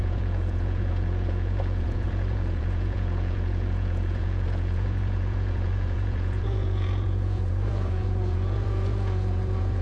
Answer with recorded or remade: remade